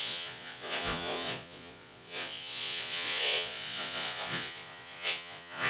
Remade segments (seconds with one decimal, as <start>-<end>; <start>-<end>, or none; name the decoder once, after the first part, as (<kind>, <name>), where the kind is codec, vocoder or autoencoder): 0.0-5.7 (vocoder, Vocos)